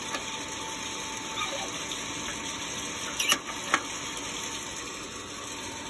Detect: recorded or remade recorded